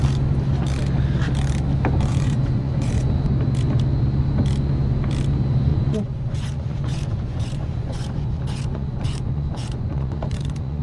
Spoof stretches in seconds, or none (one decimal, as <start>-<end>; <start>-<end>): 2.1-3.1; 5.7-10.8